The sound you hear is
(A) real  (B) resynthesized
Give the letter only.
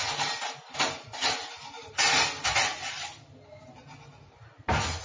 A